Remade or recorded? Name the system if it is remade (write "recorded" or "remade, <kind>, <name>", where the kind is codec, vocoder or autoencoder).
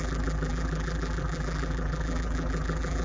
remade, vocoder, BigVGAN v2